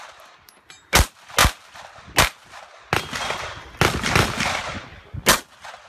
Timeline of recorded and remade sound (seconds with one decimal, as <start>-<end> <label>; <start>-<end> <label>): 0.0-5.9 recorded